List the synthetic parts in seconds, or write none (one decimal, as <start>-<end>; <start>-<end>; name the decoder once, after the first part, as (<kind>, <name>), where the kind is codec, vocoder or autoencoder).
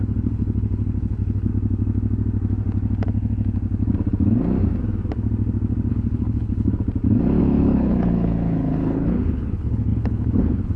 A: 0.0-1.5 (codec, HILCodec); 5.9-6.7; 7.4-10.8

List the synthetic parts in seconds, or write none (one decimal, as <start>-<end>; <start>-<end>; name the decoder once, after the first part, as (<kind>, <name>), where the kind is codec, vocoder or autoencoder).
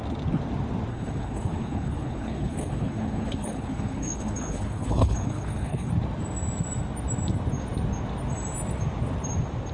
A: 0.9-5.9 (codec, HILCodec)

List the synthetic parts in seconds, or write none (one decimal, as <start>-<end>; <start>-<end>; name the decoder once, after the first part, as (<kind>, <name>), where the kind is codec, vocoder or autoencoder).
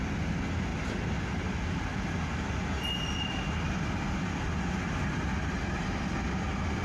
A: none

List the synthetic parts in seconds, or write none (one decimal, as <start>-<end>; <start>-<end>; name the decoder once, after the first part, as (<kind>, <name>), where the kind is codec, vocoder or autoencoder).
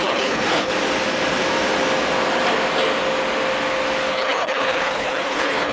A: 0.0-0.7 (codec, HILCodec); 4.1-5.7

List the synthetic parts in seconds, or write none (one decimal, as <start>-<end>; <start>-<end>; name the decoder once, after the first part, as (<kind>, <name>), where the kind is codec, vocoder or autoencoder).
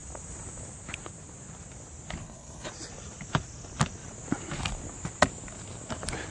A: 2.2-2.7 (codec, HILCodec)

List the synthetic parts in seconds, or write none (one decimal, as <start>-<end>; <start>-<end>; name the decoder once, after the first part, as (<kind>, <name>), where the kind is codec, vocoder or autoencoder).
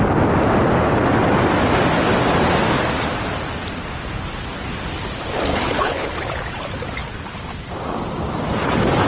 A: 5.5-6.1 (codec, HILCodec)